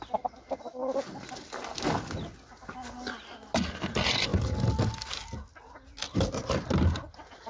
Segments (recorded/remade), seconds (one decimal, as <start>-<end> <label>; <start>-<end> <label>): 0.0-7.5 recorded